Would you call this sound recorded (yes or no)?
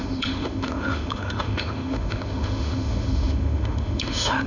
no